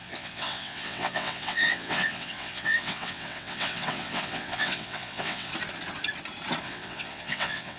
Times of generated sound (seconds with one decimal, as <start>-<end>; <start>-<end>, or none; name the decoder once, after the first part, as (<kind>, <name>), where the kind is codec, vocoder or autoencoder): 0.0-5.5 (vocoder, WaveNeXt); 6.6-7.8